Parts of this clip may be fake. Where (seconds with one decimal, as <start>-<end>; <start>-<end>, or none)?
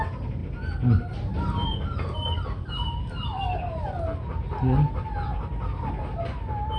none